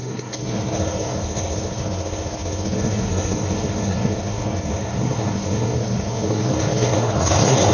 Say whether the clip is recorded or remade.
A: remade